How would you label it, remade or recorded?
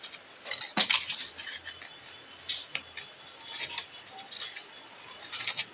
recorded